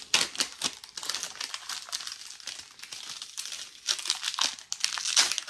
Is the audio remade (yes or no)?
no